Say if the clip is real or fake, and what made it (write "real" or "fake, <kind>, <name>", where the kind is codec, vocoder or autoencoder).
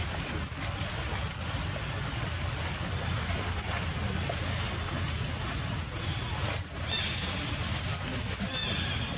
real